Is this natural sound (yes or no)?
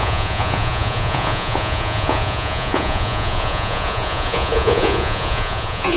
no